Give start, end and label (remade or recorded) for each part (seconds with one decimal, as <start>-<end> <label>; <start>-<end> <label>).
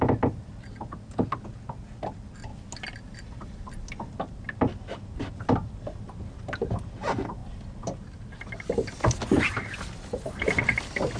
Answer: 0.0-11.2 recorded